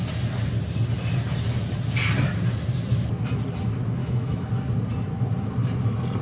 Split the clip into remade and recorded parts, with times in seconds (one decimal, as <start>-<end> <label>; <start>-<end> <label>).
0.0-4.0 recorded; 4.0-4.5 remade; 4.5-6.2 recorded